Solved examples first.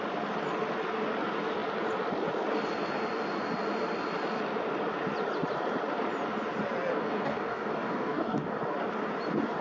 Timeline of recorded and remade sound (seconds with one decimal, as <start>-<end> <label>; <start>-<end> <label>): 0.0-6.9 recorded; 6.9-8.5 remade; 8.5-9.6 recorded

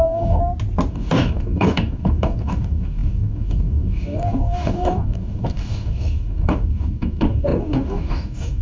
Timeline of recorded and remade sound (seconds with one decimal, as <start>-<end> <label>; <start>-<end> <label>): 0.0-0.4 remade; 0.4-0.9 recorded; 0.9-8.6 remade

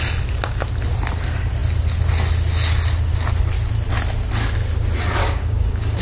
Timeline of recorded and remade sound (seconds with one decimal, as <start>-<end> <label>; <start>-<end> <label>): 0.0-5.2 recorded; 5.2-6.0 remade